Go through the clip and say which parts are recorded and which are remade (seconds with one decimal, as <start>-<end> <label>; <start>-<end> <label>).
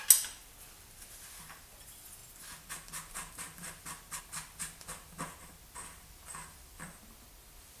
0.0-7.8 recorded